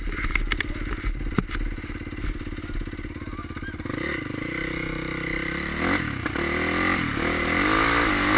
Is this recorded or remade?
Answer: recorded